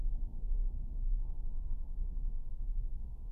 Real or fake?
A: fake